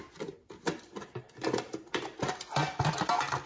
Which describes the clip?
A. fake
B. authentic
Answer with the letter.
B